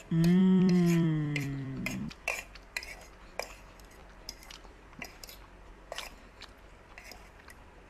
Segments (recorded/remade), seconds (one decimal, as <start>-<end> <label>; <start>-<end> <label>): 0.0-0.4 recorded; 0.4-3.4 remade; 3.4-4.0 recorded; 4.0-6.1 remade; 6.1-7.9 recorded